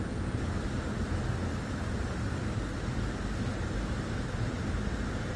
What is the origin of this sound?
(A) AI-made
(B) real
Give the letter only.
B